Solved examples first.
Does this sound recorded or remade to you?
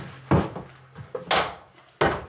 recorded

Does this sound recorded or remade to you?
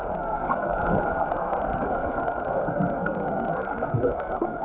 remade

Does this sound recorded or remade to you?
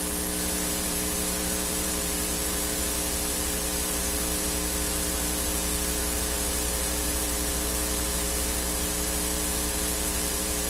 remade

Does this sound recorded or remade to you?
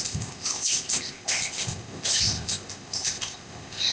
remade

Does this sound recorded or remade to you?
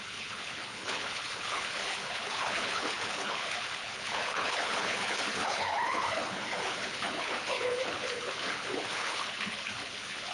remade